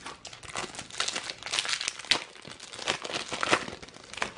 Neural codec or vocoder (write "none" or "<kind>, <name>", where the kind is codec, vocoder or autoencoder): none